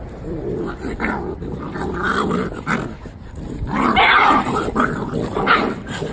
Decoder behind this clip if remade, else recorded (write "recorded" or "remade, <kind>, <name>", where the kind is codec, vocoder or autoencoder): recorded